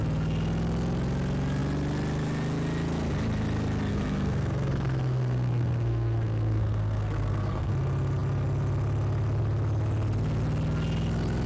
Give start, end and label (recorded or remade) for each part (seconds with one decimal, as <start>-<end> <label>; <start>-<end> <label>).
0.0-3.9 recorded; 3.9-7.7 remade; 7.7-11.5 recorded